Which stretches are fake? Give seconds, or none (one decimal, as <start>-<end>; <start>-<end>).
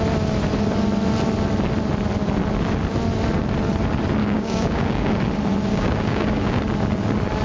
4.2-5.2; 5.7-6.6